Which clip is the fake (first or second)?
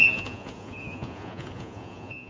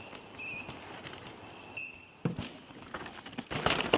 first